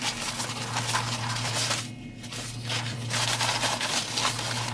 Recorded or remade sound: recorded